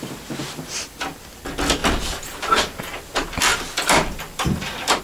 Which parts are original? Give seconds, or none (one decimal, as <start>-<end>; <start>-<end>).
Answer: 0.0-1.8; 2.8-3.5